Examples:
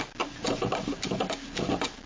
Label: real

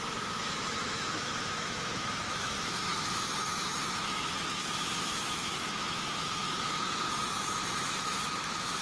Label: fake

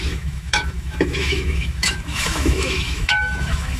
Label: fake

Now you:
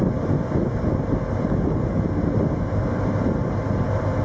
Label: real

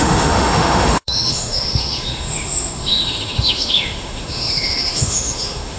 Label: fake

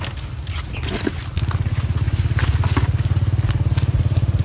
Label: real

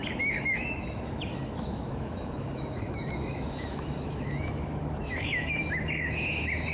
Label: fake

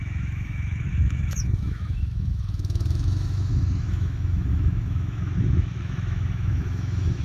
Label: fake